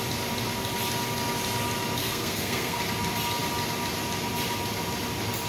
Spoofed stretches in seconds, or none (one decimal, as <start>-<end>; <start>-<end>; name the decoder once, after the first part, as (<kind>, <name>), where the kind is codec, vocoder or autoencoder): 2.0-2.8 (codec, SNAC)